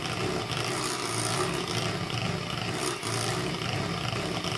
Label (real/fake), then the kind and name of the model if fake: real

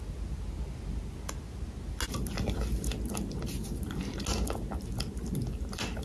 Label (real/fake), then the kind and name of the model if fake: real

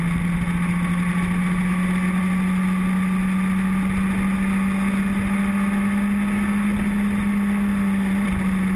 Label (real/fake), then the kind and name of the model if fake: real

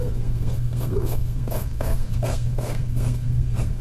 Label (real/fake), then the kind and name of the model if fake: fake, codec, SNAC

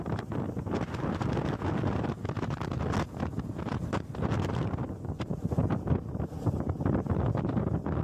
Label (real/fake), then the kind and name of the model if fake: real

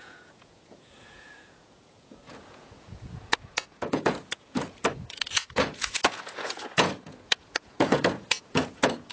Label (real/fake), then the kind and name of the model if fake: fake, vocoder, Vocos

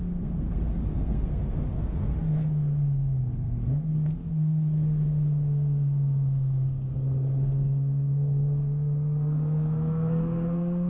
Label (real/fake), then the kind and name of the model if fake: fake, codec, SNAC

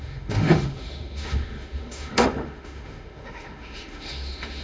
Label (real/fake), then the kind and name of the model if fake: fake, autoencoder, DAC-VAE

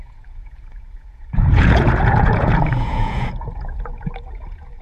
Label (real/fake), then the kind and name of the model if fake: fake, vocoder, Vocos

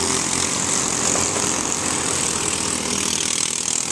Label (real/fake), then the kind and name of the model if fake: real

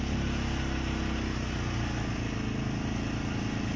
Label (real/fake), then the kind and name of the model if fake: real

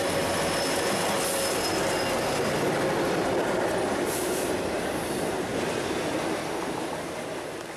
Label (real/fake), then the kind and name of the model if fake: real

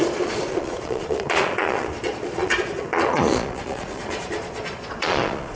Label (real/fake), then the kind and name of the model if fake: fake, vocoder, Vocos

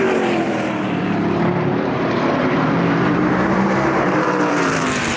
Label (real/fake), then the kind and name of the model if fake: fake, vocoder, BigVGAN v2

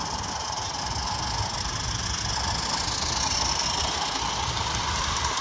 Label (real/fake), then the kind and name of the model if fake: real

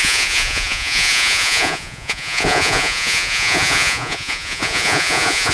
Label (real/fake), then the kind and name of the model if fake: fake, vocoder, Vocos